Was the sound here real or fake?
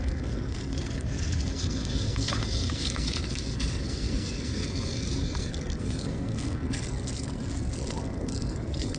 fake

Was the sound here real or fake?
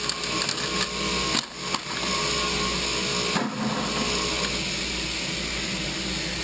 real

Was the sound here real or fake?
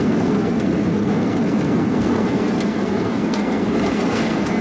fake